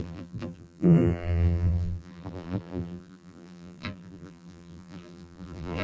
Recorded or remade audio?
remade